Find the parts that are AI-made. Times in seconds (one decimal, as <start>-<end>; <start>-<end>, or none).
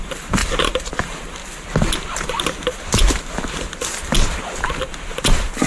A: 0.0-1.4; 4.8-5.7